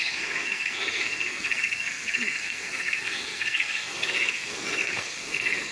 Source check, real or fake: fake